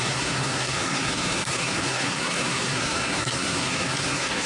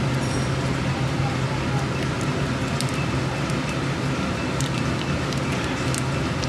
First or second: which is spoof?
first